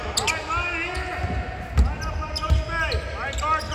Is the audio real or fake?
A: real